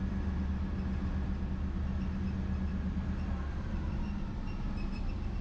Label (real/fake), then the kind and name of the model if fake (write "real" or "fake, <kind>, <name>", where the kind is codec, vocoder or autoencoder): real